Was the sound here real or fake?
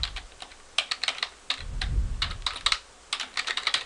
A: real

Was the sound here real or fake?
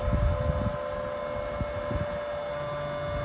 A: real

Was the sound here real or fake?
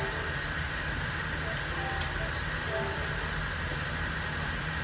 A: real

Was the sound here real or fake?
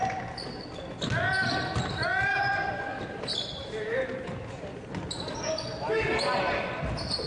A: real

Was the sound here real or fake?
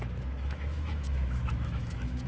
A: fake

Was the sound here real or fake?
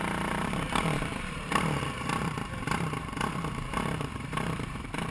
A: fake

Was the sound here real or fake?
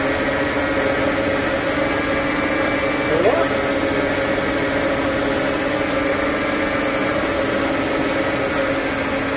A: real